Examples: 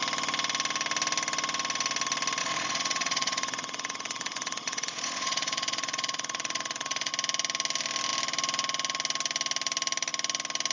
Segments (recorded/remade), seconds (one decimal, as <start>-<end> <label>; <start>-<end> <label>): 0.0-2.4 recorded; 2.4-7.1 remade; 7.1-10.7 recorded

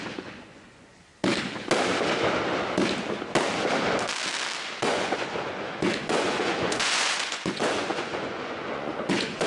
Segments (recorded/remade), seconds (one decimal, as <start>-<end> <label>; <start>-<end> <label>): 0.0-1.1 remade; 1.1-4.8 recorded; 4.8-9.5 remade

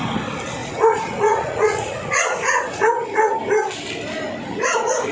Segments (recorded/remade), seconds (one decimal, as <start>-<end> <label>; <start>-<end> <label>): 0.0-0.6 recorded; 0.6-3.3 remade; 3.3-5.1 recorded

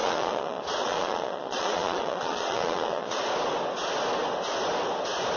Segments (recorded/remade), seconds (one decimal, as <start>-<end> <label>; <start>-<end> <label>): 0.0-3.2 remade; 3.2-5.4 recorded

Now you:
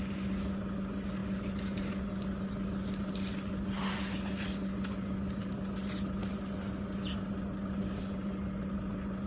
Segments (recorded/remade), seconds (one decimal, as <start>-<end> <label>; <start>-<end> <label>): 0.0-9.3 recorded

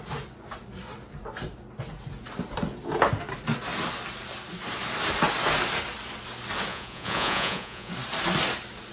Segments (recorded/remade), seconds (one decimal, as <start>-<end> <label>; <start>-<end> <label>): 0.0-6.7 recorded; 6.7-7.9 remade; 7.9-8.9 recorded